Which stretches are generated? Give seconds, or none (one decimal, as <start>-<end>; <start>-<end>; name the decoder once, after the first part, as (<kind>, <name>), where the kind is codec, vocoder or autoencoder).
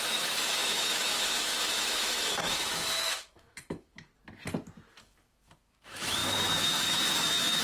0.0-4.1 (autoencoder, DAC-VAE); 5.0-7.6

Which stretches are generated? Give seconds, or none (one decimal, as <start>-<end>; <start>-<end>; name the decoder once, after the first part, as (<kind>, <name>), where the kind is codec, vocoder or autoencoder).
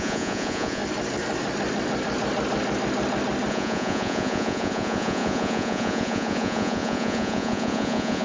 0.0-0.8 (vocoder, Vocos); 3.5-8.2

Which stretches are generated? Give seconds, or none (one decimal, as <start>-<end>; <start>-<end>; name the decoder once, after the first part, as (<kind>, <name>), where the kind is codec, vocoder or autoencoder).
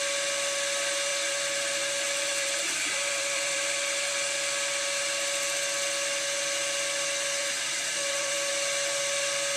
1.1-1.8 (vocoder, BigVGAN v2); 2.3-4.1; 7.4-8.5